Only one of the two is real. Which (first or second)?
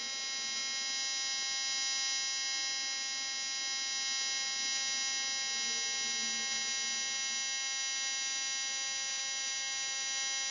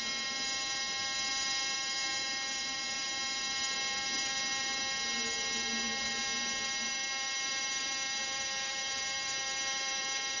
first